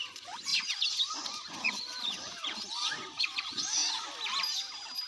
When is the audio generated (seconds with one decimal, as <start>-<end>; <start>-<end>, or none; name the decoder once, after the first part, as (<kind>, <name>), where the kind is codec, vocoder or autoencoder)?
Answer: 0.0-3.8 (vocoder, Vocos)